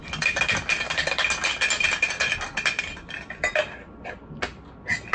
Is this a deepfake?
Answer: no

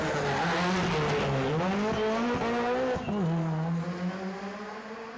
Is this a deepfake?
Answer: no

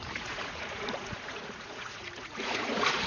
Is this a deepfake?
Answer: yes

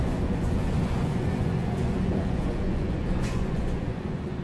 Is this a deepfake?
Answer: yes